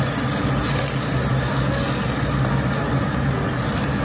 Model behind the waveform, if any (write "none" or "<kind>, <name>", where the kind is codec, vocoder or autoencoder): none